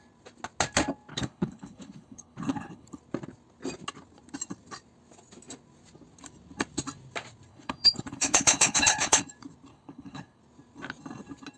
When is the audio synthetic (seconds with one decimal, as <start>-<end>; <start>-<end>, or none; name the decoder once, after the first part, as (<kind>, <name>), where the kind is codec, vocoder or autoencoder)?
1.1-3.0 (codec, HILCodec); 7.5-9.2; 9.7-10.4